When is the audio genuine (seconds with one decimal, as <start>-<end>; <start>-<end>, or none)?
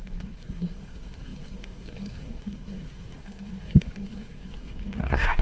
none